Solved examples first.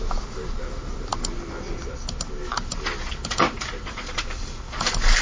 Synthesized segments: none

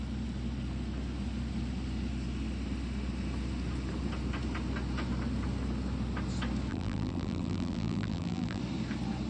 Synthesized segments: 6.7-8.6

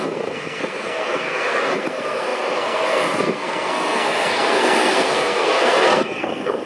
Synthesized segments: 0.0-6.7

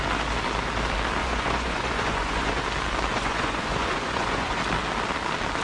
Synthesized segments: 1.2-2.6; 3.1-4.6

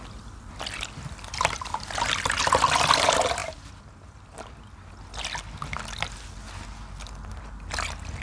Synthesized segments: none

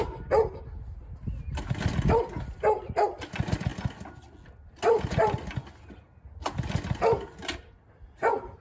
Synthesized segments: none